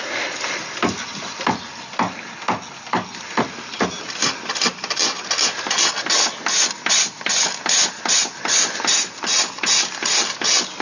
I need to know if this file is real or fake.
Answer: real